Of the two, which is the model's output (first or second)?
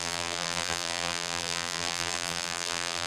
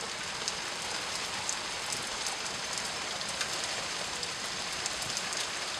first